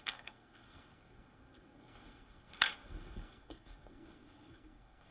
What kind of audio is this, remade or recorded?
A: remade